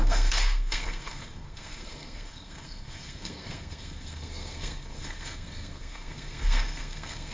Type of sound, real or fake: fake